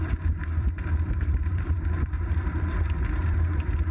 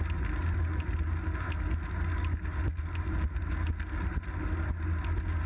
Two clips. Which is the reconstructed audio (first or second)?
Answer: first